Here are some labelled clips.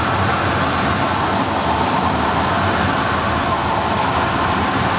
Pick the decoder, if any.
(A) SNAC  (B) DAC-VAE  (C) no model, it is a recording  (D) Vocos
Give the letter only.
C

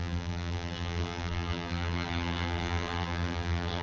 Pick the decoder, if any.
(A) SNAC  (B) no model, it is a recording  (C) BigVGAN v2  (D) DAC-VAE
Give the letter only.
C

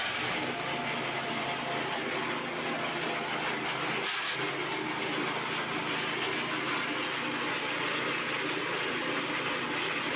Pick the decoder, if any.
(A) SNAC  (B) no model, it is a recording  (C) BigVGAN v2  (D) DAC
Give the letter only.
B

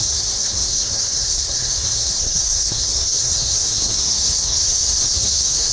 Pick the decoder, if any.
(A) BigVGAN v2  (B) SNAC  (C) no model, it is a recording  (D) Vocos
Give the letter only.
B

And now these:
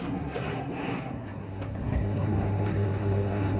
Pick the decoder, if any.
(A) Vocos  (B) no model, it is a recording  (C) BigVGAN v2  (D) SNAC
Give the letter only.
D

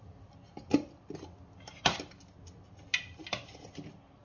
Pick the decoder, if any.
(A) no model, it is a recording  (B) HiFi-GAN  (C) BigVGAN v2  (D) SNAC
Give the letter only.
A